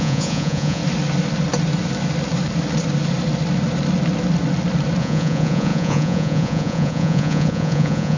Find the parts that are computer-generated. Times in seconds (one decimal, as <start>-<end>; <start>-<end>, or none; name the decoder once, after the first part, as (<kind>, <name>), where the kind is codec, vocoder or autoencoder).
0.0-0.8 (vocoder, Vocos); 5.0-8.2